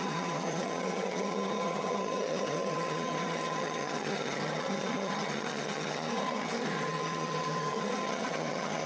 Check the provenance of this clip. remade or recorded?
remade